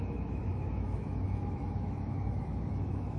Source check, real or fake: fake